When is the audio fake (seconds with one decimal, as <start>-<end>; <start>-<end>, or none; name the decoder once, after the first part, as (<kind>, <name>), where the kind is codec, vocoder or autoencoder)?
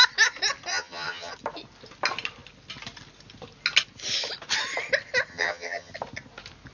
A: 0.7-1.3 (vocoder, HiFi-GAN); 5.3-5.9